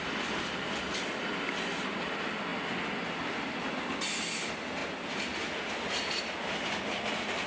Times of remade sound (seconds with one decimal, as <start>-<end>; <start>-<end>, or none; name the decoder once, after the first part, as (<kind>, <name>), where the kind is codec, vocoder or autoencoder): none